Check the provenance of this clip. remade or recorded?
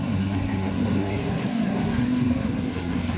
remade